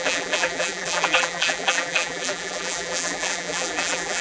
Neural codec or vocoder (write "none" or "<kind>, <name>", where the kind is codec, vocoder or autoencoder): vocoder, BigVGAN v2